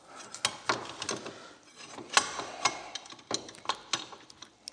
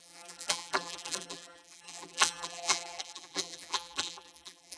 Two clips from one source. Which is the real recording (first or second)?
first